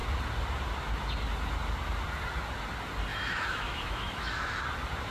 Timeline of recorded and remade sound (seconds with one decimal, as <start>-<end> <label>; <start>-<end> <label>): 0.0-3.1 recorded; 3.1-4.5 remade; 4.5-5.1 recorded